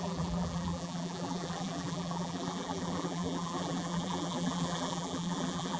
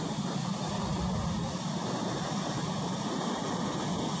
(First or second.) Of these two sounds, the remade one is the first